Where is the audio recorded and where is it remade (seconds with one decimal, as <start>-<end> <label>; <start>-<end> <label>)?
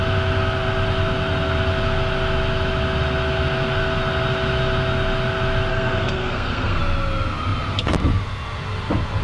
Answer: 0.0-5.7 recorded; 5.7-6.8 remade; 6.8-9.2 recorded